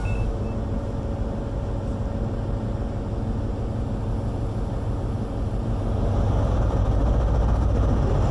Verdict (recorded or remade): recorded